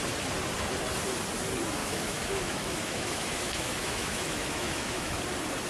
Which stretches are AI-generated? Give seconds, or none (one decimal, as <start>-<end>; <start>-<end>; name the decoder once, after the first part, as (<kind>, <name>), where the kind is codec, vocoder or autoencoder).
1.8-5.2 (autoencoder, DAC-VAE)